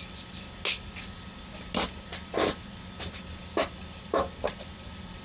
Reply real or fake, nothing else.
real